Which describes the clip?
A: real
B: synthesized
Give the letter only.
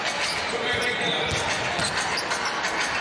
A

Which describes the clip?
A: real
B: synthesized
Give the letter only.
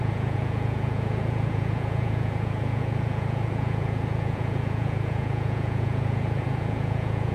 B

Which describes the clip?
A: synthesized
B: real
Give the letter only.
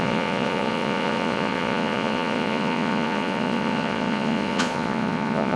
A